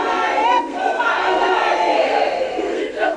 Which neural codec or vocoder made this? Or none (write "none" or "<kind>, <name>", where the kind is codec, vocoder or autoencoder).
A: codec, SNAC